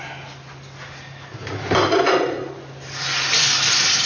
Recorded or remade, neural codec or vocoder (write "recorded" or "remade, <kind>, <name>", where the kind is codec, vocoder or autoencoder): recorded